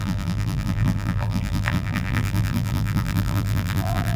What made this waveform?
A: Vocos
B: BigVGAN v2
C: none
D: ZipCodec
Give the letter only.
B